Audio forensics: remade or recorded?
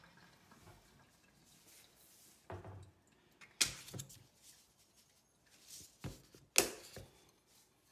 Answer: recorded